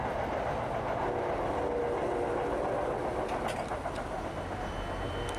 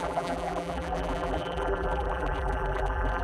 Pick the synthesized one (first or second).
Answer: second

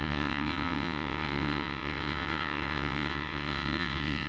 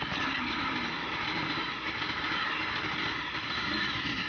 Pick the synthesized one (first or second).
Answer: first